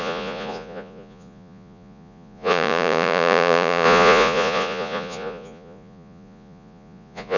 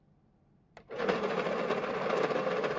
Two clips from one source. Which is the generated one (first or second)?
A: first